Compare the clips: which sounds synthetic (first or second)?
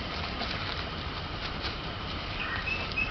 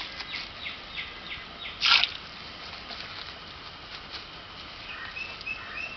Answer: first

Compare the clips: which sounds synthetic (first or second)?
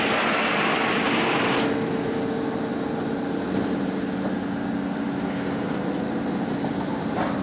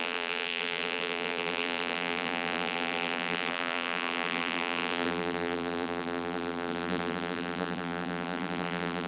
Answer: second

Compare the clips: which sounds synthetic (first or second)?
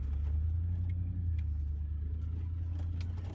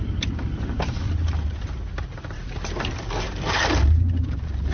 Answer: second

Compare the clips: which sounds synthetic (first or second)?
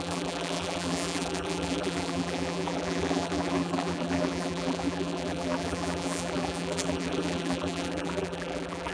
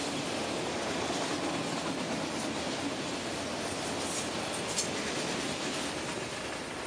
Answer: first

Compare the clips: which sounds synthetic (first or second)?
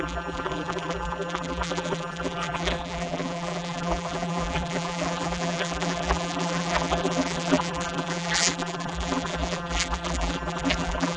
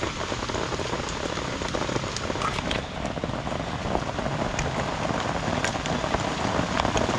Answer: first